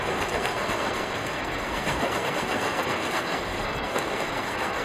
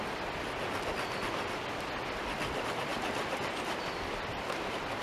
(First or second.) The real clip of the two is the second